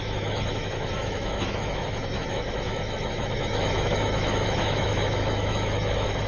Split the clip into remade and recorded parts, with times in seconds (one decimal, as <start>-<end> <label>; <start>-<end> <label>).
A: 0.0-6.3 remade